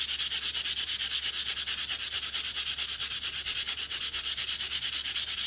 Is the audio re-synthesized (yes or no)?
no